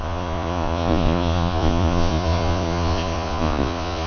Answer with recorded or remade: remade